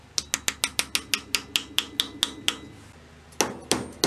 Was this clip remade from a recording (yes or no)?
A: no